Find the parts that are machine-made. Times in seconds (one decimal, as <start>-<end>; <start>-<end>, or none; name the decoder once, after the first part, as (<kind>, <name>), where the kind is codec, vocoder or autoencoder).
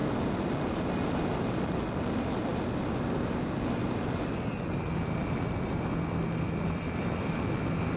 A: none